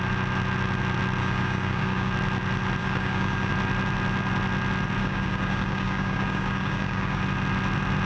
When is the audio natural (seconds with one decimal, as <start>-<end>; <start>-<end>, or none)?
0.0-1.2; 2.1-2.8; 3.5-5.0; 7.2-8.1